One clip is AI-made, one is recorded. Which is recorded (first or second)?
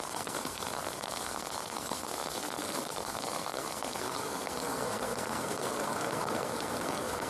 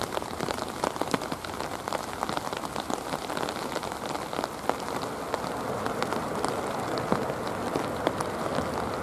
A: second